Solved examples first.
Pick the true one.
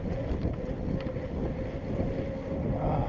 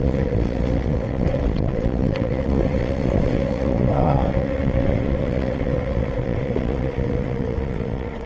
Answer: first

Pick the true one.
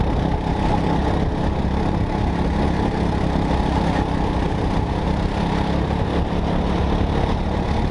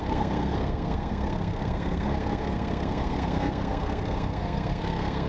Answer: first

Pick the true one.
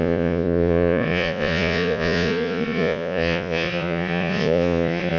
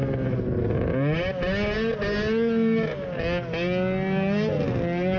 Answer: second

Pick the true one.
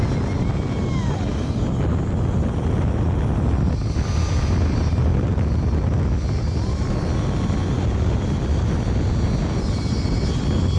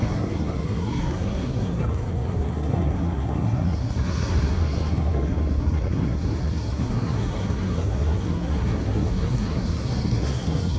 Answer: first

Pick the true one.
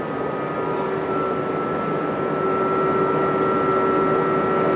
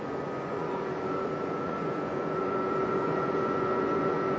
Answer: first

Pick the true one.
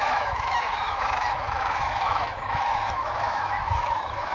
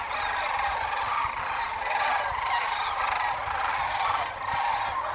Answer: second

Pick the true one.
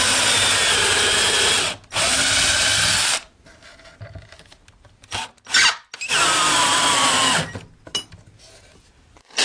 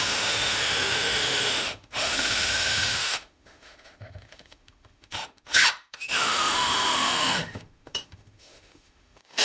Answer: first